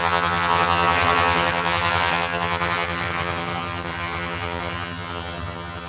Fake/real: fake